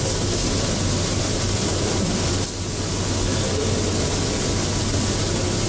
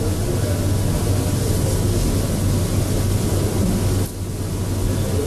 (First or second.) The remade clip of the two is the first